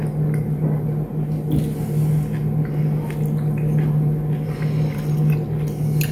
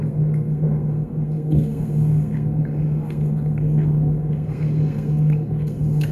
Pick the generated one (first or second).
second